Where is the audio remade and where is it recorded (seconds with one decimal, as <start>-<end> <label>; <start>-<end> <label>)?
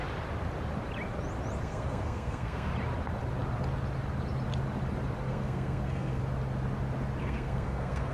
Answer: 0.0-1.6 recorded; 1.6-2.7 remade; 2.7-5.3 recorded; 5.3-6.2 remade; 6.2-7.2 recorded; 7.2-8.1 remade